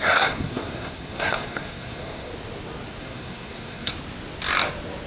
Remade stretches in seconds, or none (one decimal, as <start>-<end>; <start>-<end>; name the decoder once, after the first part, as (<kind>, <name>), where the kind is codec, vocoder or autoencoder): 0.0-2.3 (codec, SNAC); 3.0-3.9